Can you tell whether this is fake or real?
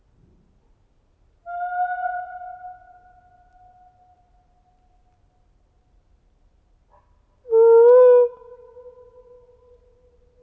real